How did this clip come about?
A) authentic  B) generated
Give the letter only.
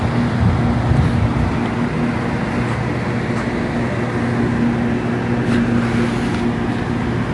A